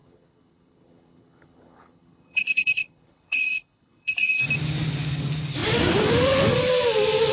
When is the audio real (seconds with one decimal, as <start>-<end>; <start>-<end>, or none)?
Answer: 4.4-7.3